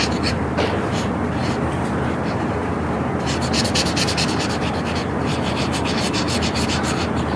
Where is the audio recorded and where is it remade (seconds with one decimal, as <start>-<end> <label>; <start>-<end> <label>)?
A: 0.0-7.4 remade